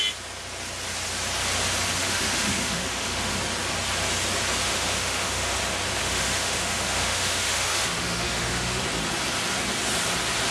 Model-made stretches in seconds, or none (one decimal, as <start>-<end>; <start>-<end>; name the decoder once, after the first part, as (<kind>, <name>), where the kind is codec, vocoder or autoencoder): 2.0-3.3 (autoencoder, DAC-VAE); 4.6-5.6; 6.0-8.8